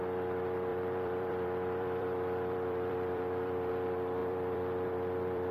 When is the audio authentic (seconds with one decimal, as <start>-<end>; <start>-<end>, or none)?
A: 0.0-0.7; 3.7-4.2